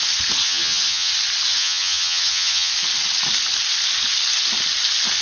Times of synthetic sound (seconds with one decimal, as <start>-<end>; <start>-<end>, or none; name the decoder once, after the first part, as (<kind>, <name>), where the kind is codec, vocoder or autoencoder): 0.4-1.1 (vocoder, HiFi-GAN); 1.5-2.7